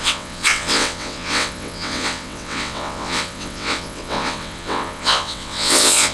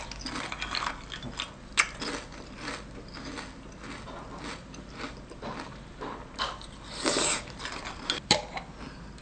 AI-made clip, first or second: first